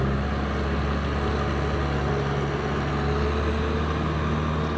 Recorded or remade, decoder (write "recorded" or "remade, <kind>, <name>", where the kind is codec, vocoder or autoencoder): recorded